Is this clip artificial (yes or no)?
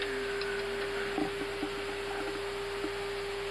no